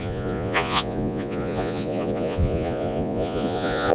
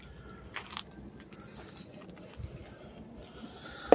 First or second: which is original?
second